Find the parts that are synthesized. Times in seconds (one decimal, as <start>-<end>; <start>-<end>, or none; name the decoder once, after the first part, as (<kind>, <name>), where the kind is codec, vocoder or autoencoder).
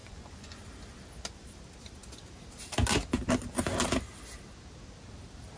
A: 0.0-0.6 (vocoder, Vocos)